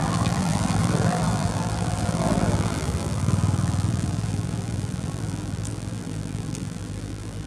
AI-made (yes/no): yes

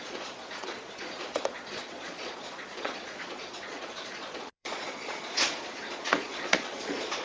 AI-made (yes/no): yes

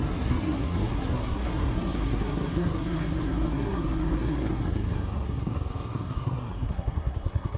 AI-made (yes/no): yes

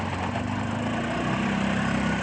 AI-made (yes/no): no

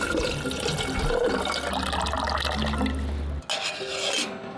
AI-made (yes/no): no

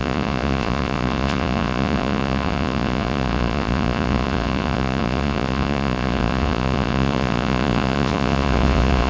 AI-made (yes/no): yes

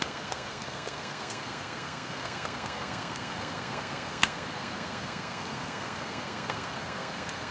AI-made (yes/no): yes